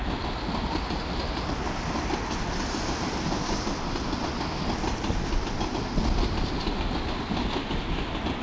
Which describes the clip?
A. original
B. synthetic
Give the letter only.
A